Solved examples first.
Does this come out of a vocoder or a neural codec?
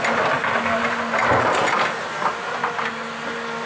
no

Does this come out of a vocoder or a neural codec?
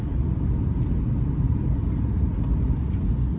yes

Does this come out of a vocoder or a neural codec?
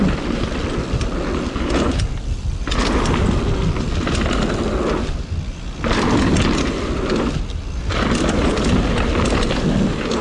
no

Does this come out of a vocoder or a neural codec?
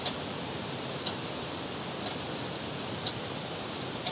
yes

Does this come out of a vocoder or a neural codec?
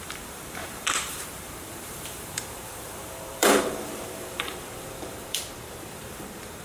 yes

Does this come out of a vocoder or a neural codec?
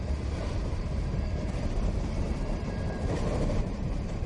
yes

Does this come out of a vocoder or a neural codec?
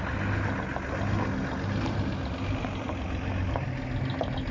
no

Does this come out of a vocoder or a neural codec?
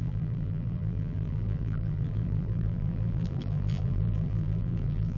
yes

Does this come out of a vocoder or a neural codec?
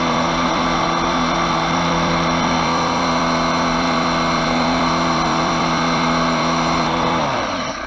yes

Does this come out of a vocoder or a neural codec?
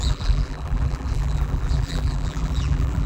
yes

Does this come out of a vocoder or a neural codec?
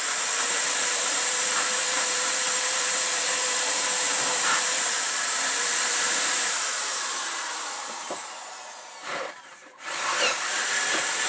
yes